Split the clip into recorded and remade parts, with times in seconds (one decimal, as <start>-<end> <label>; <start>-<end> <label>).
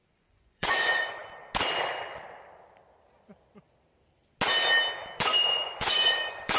0.0-1.2 remade; 1.2-5.2 recorded; 5.2-6.6 remade